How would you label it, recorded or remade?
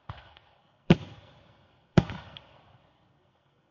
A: remade